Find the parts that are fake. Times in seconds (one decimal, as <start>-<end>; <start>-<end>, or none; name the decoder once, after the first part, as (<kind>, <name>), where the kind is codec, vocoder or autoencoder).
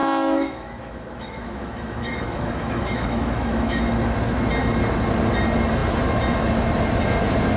0.0-3.8 (autoencoder, DAC-VAE)